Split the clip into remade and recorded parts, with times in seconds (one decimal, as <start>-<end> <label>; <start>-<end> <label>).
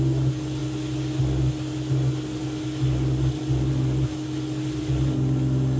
0.0-5.8 recorded